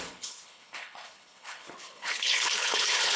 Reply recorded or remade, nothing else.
remade